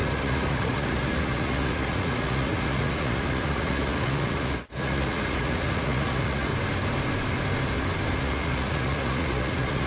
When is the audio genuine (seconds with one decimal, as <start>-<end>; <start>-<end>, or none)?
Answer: 6.5-8.2